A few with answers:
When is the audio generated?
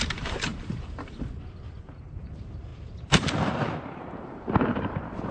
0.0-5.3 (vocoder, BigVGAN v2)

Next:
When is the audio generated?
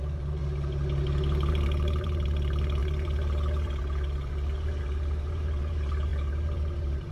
0.0-0.4 (vocoder, BigVGAN v2); 1.5-7.1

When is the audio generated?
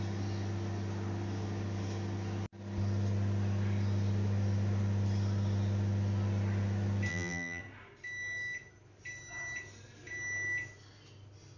7.1-7.6 (vocoder, BigVGAN v2)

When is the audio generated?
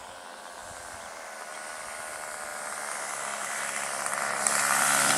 0.0-2.5 (vocoder, BigVGAN v2); 3.4-5.2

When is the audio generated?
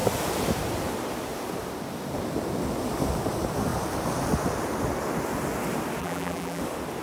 6.0-6.6 (vocoder, BigVGAN v2)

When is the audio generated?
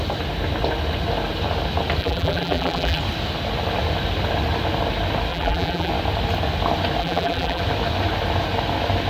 2.0-3.0 (vocoder, BigVGAN v2); 5.3-5.9; 7.0-7.6